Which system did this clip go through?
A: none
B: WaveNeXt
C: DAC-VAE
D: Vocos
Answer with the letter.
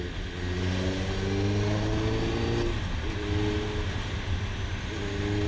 A